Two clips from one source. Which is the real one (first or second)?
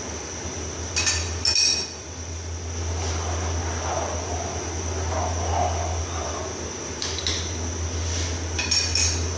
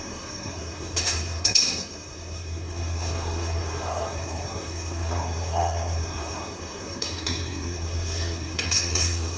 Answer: first